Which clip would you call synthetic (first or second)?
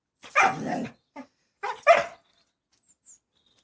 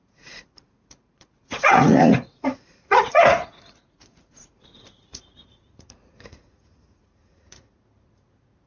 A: second